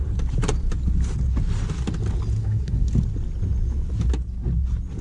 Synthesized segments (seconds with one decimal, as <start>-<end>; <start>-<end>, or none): 2.4-2.9